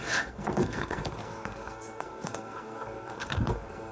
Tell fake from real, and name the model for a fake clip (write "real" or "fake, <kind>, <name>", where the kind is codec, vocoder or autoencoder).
fake, codec, SNAC